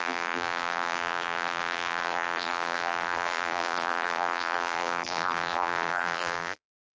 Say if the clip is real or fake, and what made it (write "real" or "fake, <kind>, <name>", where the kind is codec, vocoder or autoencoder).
fake, vocoder, BigVGAN v2